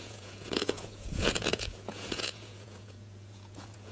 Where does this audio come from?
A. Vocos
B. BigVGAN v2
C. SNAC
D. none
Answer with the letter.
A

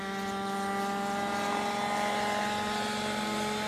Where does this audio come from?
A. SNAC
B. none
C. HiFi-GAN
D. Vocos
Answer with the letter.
B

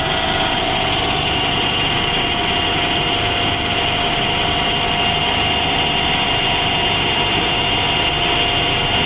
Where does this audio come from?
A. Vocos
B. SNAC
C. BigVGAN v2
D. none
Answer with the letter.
D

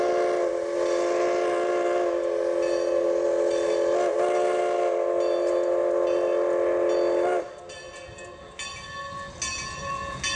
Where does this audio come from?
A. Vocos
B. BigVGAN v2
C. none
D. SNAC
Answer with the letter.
C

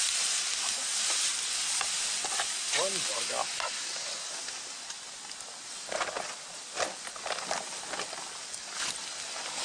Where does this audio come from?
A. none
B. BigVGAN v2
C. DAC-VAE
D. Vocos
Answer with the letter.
A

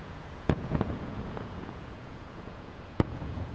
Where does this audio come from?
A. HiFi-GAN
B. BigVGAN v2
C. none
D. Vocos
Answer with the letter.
D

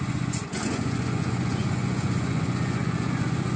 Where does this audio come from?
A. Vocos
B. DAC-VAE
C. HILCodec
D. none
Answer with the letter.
A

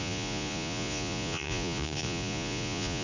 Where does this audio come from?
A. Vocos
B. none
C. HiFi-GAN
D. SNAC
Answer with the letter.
A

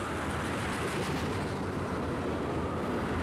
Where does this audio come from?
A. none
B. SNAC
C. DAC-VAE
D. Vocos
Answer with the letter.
A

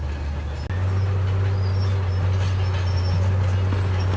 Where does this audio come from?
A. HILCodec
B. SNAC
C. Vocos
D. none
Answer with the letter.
D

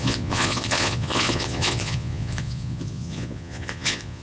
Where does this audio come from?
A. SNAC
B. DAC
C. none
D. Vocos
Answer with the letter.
D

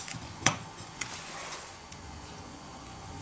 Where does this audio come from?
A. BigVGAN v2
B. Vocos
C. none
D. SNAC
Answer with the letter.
B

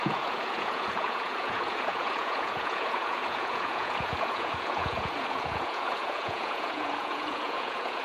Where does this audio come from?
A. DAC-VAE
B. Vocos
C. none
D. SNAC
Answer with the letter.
B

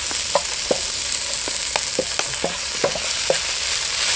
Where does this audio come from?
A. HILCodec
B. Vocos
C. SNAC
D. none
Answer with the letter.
D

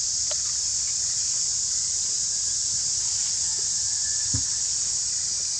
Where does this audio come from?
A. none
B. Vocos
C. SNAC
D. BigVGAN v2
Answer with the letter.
A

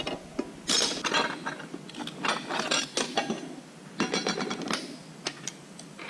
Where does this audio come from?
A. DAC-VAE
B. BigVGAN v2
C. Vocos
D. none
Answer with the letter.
D